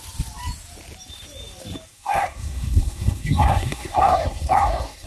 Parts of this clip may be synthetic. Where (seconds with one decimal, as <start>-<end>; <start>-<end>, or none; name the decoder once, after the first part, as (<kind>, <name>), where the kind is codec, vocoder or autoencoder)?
1.9-5.1 (codec, SNAC)